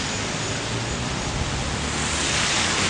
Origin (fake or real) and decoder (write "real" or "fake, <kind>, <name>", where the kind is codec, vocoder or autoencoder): real